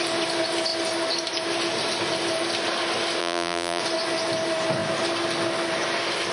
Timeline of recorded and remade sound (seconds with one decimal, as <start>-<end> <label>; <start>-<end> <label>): 0.0-3.2 recorded; 3.2-3.8 remade; 3.8-6.3 recorded